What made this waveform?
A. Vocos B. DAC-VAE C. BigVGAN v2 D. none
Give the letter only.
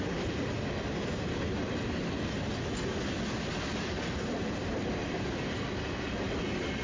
D